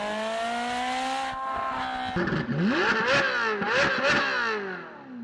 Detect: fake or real real